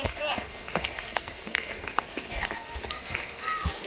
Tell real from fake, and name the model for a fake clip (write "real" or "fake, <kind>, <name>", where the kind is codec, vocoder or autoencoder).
fake, codec, SNAC